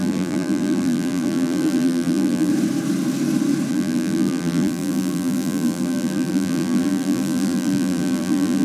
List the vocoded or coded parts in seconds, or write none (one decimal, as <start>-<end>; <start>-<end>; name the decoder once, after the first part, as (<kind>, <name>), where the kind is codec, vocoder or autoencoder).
0.0-2.5 (vocoder, BigVGAN v2); 3.7-8.6